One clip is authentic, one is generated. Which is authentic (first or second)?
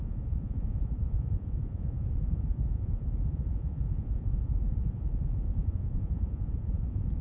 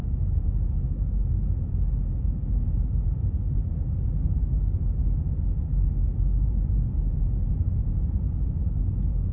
second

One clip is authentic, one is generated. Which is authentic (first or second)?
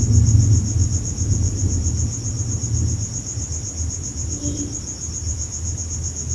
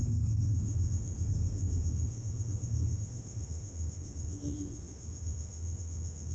first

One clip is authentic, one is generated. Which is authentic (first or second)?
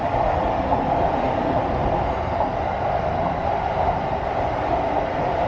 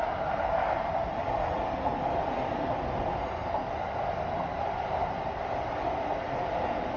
second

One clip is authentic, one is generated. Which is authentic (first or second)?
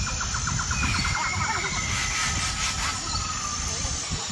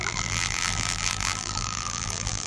first